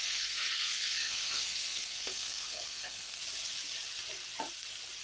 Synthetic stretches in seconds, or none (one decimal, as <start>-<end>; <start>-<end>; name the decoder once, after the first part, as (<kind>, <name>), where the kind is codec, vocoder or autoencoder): 0.0-3.2 (codec, SNAC)